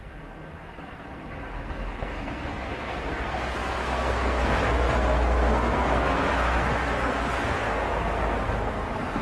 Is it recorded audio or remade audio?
remade